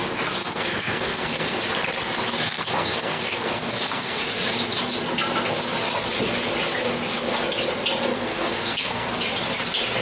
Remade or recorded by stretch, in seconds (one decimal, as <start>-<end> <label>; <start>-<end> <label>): 0.0-0.4 recorded; 0.4-1.6 remade; 1.6-2.3 recorded; 2.3-4.2 remade; 4.2-8.1 recorded; 8.1-9.1 remade; 9.1-10.0 recorded